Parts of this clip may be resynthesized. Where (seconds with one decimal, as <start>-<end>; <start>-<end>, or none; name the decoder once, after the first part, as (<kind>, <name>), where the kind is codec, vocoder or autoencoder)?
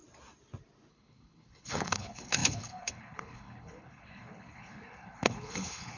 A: 0.9-6.0 (codec, HILCodec)